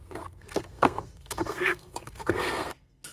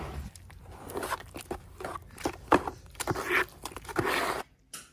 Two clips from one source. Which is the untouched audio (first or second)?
second